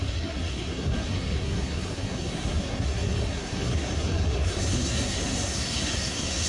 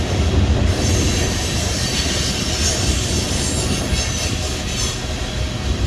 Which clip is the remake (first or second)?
first